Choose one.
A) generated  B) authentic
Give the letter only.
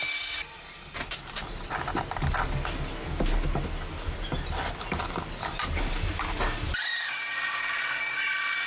B